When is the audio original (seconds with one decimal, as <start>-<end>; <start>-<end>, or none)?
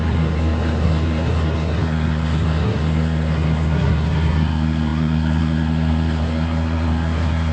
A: none